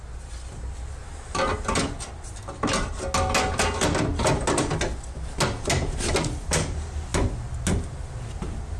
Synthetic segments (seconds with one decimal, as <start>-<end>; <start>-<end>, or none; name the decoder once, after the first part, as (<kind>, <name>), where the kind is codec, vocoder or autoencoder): none